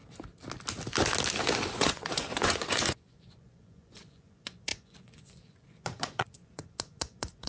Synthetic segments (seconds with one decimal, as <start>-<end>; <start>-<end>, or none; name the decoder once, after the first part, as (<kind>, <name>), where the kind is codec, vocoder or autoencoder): 1.7-7.5 (vocoder, Vocos)